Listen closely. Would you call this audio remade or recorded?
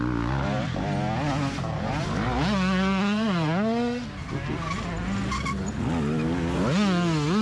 recorded